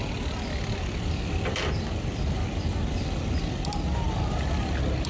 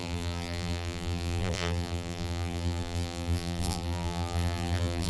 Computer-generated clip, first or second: second